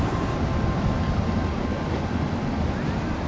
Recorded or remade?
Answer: recorded